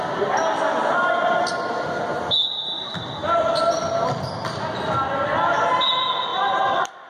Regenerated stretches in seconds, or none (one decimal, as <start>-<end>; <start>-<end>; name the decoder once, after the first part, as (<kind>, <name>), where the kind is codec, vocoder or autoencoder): 3.2-3.7 (vocoder, BigVGAN v2); 6.3-7.1